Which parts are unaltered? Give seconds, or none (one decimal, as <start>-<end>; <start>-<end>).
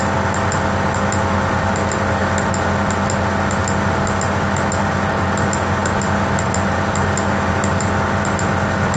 0.0-9.0